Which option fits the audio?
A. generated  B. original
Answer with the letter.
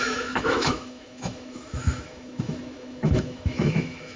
A